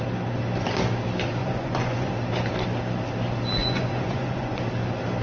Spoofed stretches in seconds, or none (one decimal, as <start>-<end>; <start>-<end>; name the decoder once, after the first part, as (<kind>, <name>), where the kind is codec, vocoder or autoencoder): 1.4-2.1 (vocoder, Vocos); 3.6-4.6